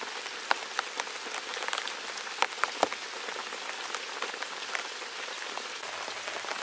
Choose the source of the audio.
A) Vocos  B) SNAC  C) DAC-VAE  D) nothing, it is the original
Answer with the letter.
D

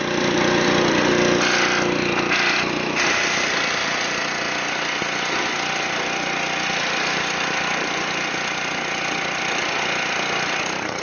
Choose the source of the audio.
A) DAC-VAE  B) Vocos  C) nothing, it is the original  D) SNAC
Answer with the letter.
C